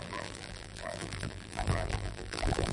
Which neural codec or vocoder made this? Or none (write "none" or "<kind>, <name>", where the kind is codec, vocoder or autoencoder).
vocoder, BigVGAN v2